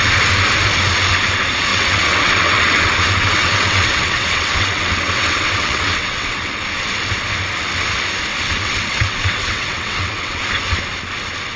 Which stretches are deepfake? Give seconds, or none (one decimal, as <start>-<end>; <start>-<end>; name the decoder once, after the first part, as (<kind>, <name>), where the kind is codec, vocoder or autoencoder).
1.7-6.6 (vocoder, WaveNeXt); 8.3-10.4